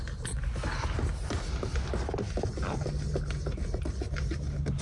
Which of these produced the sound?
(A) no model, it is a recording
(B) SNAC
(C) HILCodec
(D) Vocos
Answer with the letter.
A